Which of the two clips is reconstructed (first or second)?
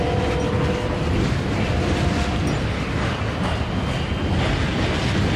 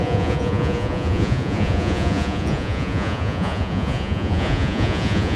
second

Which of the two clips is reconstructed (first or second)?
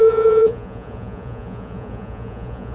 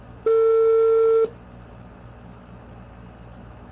first